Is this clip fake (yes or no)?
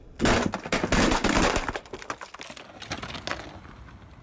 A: no